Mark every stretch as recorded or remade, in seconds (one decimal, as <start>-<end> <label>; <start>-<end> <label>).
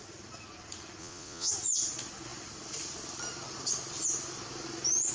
0.0-1.0 recorded; 1.0-1.5 remade; 1.5-5.1 recorded